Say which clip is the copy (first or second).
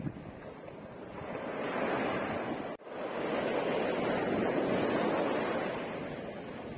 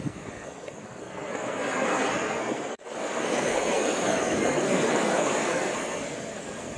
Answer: second